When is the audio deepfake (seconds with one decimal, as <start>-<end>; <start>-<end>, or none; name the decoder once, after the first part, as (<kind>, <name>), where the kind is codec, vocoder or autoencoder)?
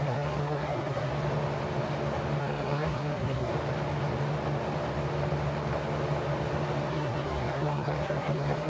0.0-1.1 (codec, SNAC); 2.4-3.5; 6.9-8.7